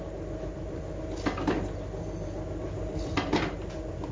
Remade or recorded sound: recorded